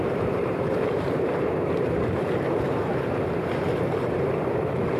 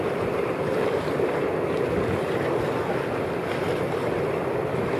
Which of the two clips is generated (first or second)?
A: first